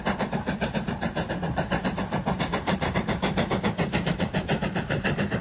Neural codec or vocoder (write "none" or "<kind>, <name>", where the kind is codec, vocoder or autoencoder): vocoder, BigVGAN v2